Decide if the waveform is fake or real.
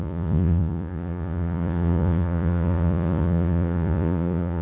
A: fake